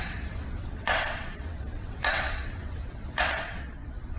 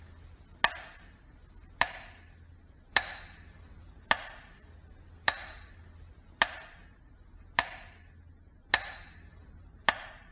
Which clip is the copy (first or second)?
first